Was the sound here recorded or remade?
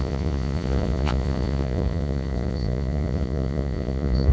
remade